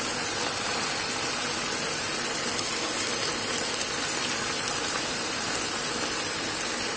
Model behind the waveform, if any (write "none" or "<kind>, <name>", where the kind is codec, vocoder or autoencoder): none